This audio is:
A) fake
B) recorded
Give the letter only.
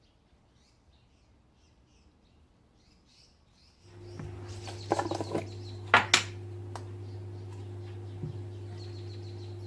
B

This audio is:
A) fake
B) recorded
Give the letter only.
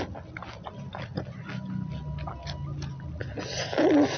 B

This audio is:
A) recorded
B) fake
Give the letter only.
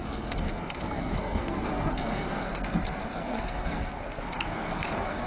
B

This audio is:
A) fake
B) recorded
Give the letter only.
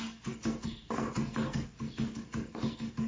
A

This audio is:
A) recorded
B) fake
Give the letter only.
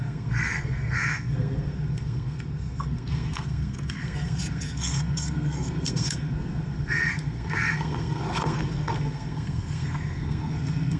B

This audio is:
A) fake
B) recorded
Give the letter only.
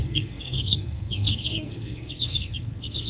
A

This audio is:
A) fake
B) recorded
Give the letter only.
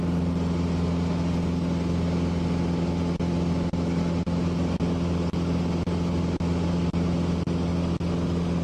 B